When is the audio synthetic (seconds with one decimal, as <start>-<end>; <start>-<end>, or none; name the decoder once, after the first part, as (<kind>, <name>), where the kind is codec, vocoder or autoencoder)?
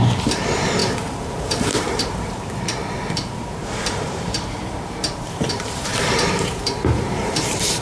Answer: 0.0-7.8 (vocoder, BigVGAN v2)